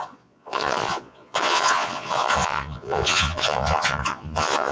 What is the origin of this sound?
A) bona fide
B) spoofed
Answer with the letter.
B